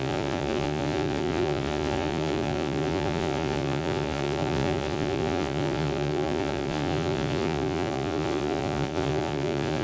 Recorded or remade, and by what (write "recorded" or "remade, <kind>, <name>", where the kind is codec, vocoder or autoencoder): remade, vocoder, Vocos